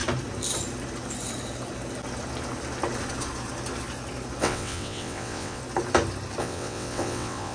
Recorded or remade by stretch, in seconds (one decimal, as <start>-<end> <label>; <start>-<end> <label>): 0.0-4.4 recorded; 4.4-5.6 remade; 5.6-6.4 recorded; 6.4-7.5 remade